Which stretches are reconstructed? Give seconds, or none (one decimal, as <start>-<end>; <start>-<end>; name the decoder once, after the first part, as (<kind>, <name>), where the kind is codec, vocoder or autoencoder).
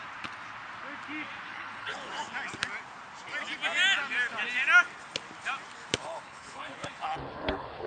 1.5-2.1 (codec, HILCodec); 6.0-7.9